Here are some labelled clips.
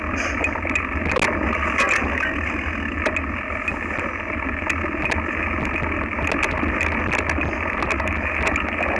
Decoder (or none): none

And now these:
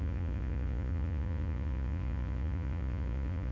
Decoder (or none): vocoder, Vocos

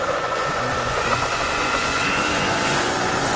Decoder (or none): vocoder, Vocos